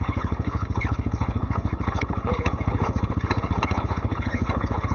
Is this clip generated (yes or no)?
yes